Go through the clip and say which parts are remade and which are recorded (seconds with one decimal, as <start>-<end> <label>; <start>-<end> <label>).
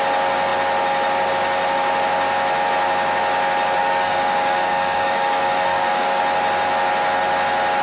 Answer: 0.0-3.8 recorded; 3.8-6.2 remade; 6.2-7.8 recorded